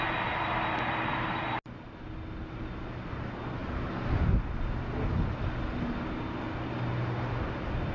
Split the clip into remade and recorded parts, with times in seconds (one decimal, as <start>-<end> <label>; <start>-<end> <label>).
0.0-7.9 recorded